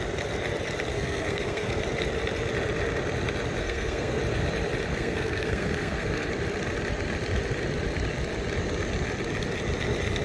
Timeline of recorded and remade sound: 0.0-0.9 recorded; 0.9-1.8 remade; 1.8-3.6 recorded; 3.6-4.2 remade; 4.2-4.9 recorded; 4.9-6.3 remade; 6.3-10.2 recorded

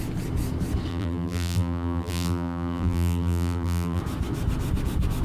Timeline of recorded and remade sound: 0.0-0.9 recorded; 0.9-4.0 remade; 4.0-5.2 recorded

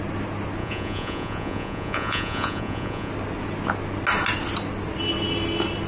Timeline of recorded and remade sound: 0.0-0.6 recorded; 0.6-3.1 remade; 3.1-5.9 recorded

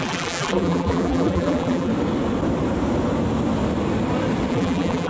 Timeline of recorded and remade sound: 0.0-1.9 remade; 1.9-4.5 recorded; 4.5-5.1 remade

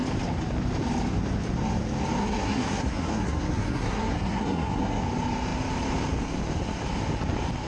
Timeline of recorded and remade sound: 0.0-2.2 recorded; 2.2-5.0 remade; 5.0-7.7 recorded

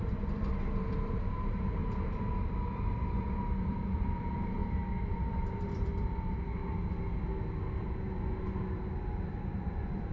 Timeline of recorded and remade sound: 0.0-1.8 remade; 1.8-2.9 recorded; 2.9-4.6 remade; 4.6-5.1 recorded; 5.1-6.6 remade; 6.6-9.3 recorded; 9.3-10.1 remade

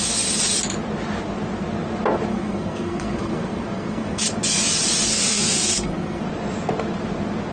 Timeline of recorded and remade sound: 0.0-2.3 recorded; 2.3-4.2 remade; 4.2-5.1 recorded; 5.1-6.2 remade; 6.2-7.5 recorded

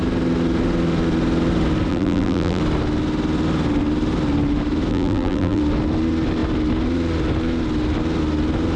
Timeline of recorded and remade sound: 0.0-1.9 recorded; 1.9-2.6 remade; 2.6-4.9 recorded; 4.9-5.6 remade; 5.6-8.8 recorded